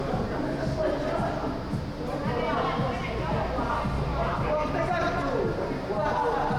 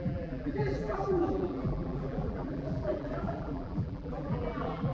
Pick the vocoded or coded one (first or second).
second